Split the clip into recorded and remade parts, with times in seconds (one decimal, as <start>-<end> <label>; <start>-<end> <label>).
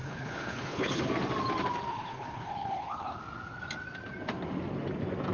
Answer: 0.0-1.1 remade; 1.1-1.9 recorded; 1.9-3.2 remade; 3.2-5.3 recorded